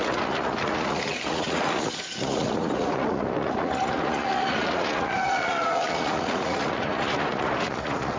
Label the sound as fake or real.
fake